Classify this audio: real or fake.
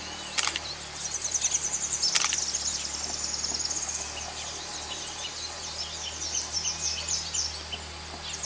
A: real